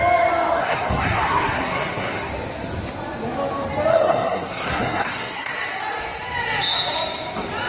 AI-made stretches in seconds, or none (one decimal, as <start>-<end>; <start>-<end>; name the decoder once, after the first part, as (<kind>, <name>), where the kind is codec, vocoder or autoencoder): 0.6-2.3 (codec, SNAC); 3.9-5.5